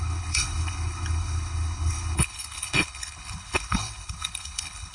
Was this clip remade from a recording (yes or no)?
yes